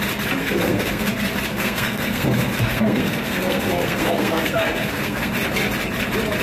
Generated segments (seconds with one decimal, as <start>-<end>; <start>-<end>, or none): 0.4-1.1; 1.5-5.3